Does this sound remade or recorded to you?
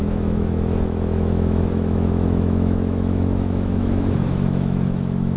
remade